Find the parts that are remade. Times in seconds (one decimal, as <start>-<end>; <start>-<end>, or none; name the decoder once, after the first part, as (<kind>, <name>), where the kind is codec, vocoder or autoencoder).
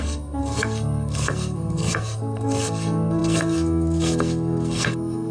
0.0-5.3 (codec, SNAC)